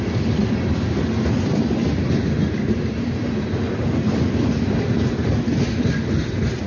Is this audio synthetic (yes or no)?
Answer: no